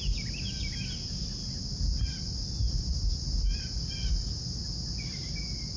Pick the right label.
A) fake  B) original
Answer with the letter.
B